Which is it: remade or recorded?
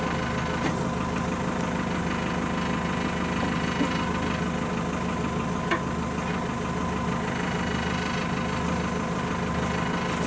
recorded